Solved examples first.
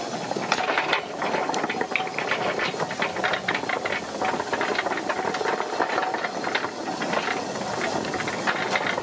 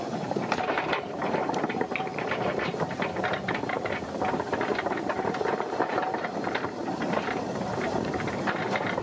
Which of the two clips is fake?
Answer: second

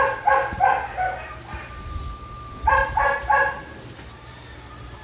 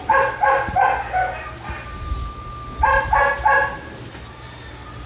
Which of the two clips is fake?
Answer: first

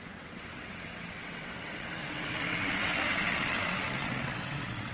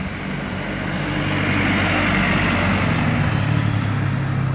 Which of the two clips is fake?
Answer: first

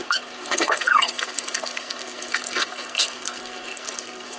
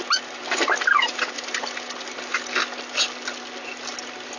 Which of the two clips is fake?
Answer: first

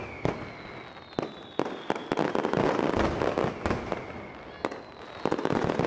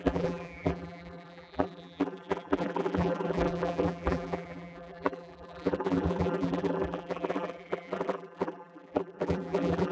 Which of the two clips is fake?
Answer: second